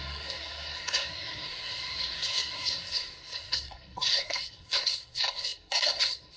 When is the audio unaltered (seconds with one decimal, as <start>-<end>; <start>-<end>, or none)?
none